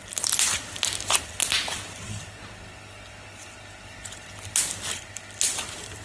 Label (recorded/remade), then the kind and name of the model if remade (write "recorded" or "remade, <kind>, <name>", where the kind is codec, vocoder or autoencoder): recorded